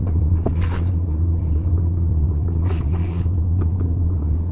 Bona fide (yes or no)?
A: no